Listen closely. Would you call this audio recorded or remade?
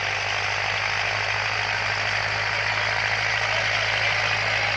recorded